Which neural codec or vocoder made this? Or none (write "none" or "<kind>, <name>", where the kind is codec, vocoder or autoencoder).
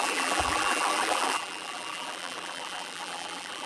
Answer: vocoder, BigVGAN v2